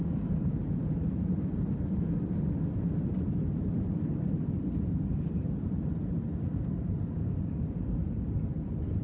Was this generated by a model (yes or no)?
no